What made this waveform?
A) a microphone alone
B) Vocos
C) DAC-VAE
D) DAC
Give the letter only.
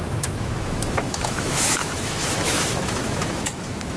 C